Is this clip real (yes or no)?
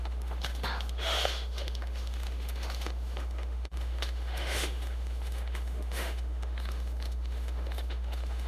no